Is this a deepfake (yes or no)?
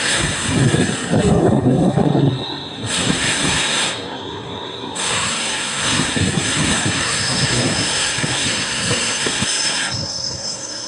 yes